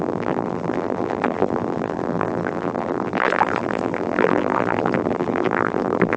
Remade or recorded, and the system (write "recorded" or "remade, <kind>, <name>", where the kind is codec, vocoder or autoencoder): remade, vocoder, BigVGAN v2